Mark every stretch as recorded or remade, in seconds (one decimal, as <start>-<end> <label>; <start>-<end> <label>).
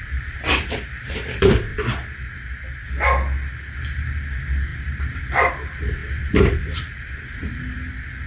0.0-1.7 remade; 1.7-3.5 recorded; 3.5-8.3 remade